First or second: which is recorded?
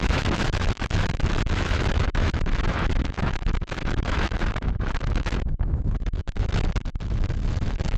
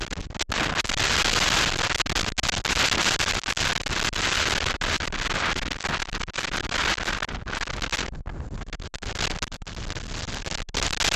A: second